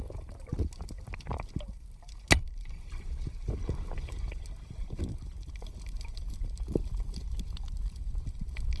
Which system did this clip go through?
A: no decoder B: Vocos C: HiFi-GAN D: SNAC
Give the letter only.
A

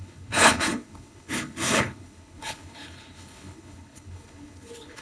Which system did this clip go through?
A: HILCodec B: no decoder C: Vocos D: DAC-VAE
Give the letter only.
A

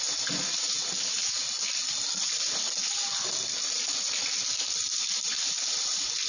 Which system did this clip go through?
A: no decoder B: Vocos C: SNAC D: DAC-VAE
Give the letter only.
A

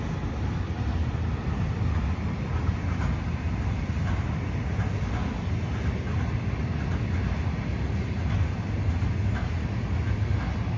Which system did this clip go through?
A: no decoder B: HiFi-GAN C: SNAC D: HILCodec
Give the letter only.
A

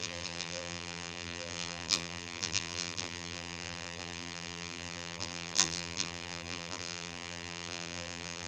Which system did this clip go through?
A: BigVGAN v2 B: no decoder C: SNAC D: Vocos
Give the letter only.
A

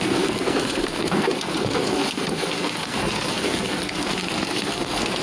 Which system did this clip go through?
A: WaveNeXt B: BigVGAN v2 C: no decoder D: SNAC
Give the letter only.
D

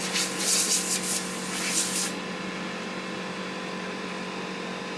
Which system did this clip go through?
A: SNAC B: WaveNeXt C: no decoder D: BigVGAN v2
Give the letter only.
C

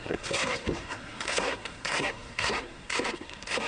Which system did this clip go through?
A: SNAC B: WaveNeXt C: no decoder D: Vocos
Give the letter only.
A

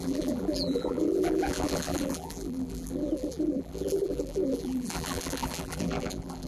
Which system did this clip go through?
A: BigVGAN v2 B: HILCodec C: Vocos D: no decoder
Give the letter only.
A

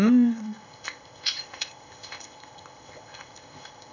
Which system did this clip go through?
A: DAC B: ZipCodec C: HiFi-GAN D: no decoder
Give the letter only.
B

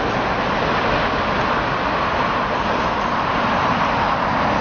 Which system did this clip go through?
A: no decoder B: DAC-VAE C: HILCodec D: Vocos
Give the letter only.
A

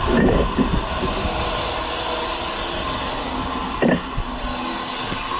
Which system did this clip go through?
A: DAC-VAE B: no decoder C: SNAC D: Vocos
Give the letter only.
B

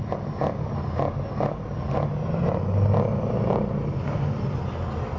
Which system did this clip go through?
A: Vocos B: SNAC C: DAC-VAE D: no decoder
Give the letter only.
D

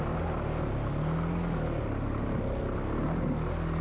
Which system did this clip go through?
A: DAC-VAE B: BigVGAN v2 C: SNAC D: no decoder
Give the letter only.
D